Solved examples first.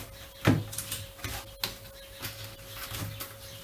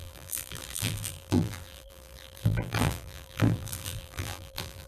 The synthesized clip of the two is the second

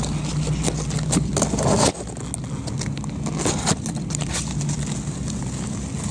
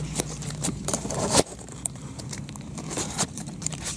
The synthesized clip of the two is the second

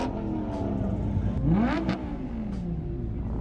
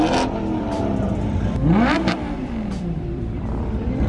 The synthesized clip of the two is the second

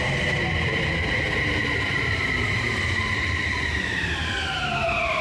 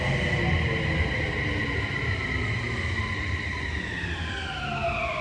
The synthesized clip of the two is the first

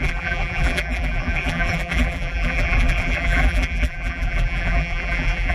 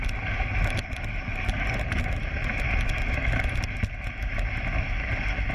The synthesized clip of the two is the first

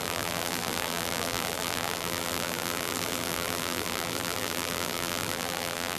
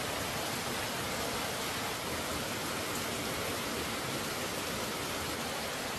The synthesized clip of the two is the first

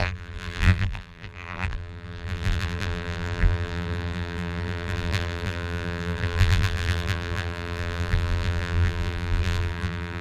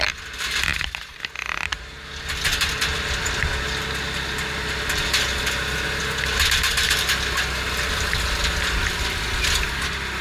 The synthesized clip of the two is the first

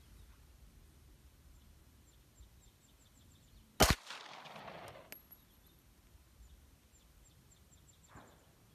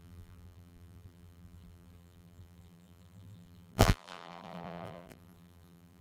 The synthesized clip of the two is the second